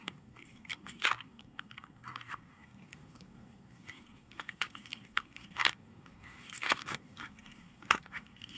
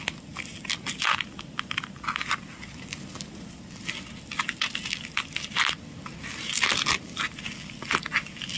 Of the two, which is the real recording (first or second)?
second